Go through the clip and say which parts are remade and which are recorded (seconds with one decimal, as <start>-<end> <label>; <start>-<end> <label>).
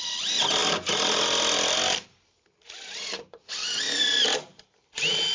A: 0.0-5.3 recorded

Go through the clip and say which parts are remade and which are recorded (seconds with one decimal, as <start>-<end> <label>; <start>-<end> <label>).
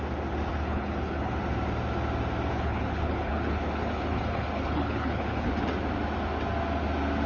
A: 0.0-0.5 recorded; 0.5-1.4 remade; 1.4-2.5 recorded; 2.5-5.5 remade; 5.5-7.3 recorded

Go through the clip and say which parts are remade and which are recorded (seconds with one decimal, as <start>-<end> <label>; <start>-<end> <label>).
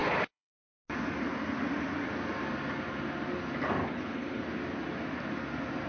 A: 0.0-0.5 remade; 0.5-3.8 recorded; 3.8-4.4 remade; 4.4-5.9 recorded